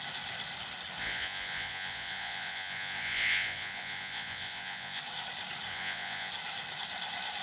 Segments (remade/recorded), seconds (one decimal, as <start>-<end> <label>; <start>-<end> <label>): 0.0-1.0 recorded; 1.0-5.0 remade; 5.0-5.7 recorded; 5.7-6.3 remade; 6.3-7.4 recorded

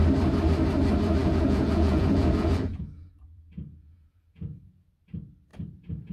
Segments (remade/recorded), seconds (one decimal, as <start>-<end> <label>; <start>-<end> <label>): 0.0-1.2 recorded; 1.2-4.9 remade; 4.9-5.5 recorded; 5.5-6.1 remade